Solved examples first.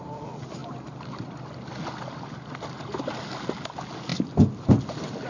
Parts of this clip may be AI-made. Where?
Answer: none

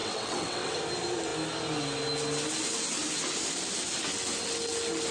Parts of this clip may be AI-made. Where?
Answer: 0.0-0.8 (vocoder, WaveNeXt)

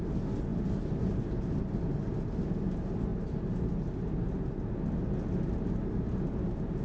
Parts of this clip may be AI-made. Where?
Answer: none